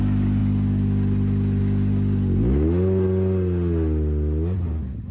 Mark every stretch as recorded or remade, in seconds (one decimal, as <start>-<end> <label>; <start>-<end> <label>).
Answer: 0.0-5.1 recorded